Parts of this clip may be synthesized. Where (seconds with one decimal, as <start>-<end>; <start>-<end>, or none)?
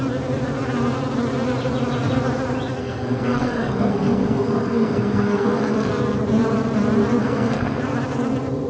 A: 2.8-5.9; 7.2-7.8